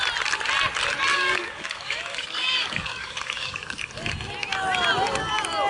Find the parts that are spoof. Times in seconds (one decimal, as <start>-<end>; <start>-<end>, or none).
1.1-3.9